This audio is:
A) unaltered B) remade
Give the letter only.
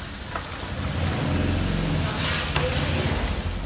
A